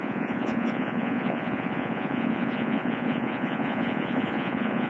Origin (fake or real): fake